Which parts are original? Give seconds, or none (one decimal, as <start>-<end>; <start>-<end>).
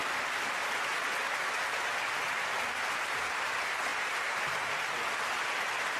0.0-6.0